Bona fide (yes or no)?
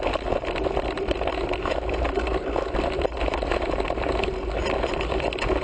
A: yes